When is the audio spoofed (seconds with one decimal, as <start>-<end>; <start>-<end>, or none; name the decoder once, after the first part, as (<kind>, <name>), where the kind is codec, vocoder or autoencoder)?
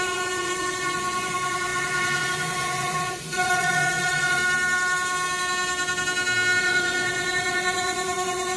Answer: 0.0-4.4 (vocoder, Vocos); 6.6-8.6